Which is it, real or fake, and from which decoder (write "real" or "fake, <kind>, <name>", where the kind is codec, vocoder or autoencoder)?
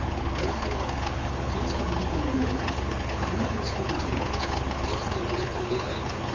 fake, codec, HILCodec